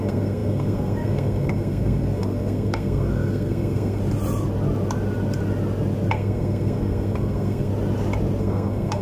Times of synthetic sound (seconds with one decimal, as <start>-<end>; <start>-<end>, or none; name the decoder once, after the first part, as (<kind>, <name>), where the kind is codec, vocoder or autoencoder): 0.0-4.0 (codec, SNAC); 6.1-7.7; 8.4-9.0